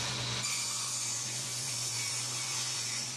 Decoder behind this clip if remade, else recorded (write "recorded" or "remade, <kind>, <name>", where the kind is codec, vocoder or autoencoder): remade, vocoder, Vocos